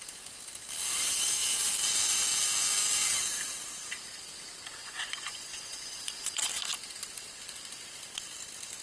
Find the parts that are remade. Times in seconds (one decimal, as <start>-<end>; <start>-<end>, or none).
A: 4.8-6.5